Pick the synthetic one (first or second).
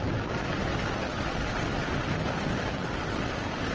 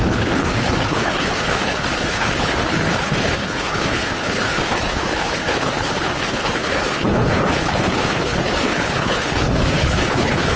second